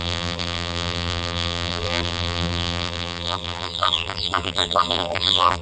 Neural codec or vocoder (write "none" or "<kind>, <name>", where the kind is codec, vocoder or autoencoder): vocoder, BigVGAN v2